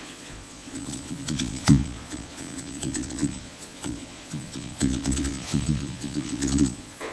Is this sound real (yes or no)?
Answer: no